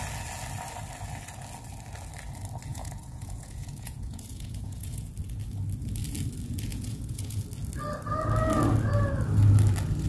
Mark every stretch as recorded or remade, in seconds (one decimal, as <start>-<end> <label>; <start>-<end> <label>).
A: 0.0-2.7 recorded; 2.7-5.1 remade; 5.1-6.7 recorded; 6.7-7.4 remade; 7.4-10.1 recorded